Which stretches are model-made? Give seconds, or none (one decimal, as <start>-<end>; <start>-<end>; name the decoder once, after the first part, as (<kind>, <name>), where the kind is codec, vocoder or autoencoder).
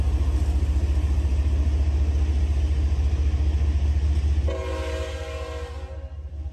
none